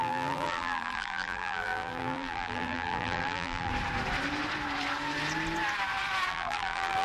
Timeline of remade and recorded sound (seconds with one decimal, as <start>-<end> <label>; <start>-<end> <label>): 0.0-3.7 remade; 3.7-6.3 recorded; 6.3-7.0 remade

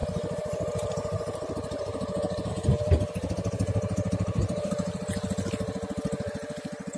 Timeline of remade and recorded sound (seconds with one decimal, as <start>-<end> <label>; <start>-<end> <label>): 0.0-2.5 remade; 2.5-7.0 recorded

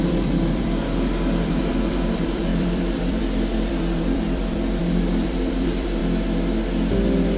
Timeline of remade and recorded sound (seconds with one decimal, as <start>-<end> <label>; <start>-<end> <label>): 0.0-6.0 remade; 6.0-7.4 recorded

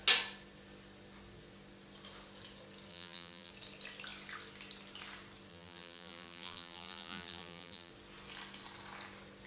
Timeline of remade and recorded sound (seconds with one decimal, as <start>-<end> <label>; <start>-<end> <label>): 0.0-2.9 recorded; 2.9-3.5 remade; 3.5-5.5 recorded; 5.5-7.9 remade; 7.9-9.5 recorded

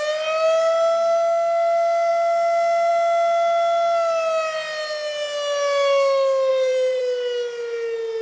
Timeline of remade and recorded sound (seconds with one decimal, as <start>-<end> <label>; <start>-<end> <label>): 0.0-6.5 recorded; 6.5-7.0 remade; 7.0-8.2 recorded